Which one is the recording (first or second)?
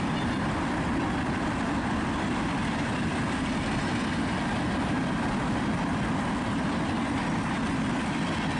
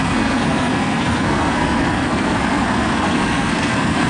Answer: first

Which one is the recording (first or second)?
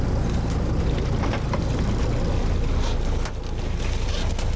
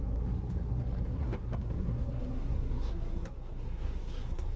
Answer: first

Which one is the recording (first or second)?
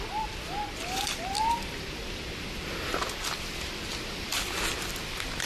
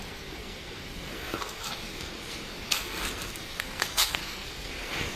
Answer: first